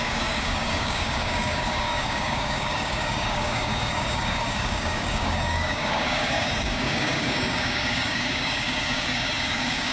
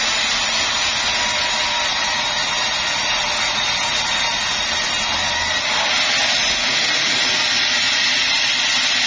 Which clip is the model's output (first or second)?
first